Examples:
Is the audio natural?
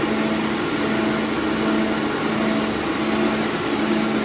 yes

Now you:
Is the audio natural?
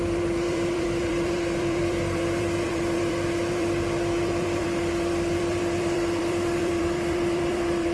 no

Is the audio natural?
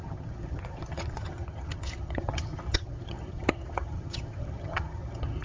no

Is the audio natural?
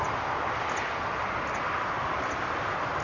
yes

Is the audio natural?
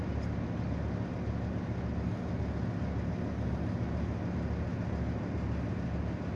yes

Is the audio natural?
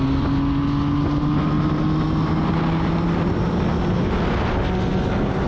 yes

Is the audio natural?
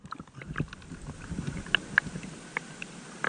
yes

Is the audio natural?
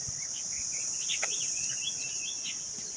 yes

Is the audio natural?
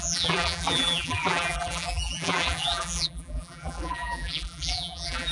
no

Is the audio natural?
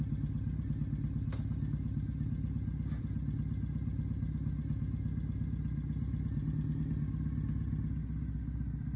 yes